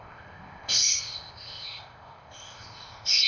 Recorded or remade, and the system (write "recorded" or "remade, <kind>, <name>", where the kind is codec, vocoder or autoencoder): remade, codec, ZipCodec